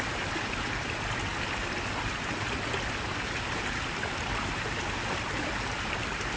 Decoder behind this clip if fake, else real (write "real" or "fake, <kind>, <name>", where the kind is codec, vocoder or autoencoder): real